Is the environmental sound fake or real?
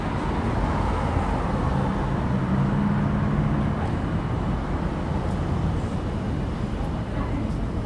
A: real